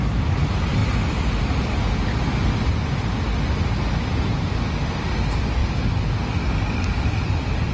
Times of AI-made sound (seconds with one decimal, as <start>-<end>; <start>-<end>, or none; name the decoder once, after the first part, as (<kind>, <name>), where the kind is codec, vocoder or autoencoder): none